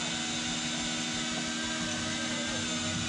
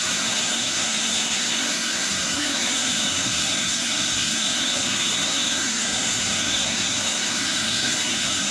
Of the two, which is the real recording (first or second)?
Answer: first